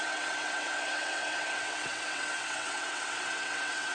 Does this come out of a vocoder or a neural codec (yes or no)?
yes